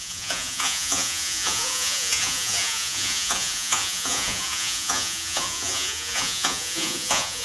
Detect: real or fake fake